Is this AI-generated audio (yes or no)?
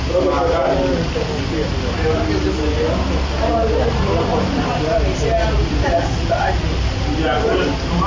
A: no